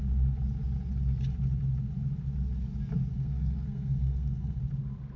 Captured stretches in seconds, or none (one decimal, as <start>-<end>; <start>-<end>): 0.0-3.1; 4.6-5.2